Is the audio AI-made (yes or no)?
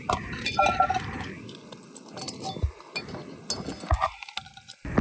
no